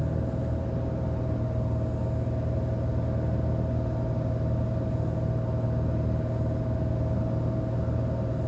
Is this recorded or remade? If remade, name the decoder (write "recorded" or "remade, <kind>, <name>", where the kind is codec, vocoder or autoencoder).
recorded